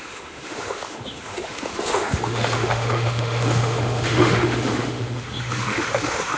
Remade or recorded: remade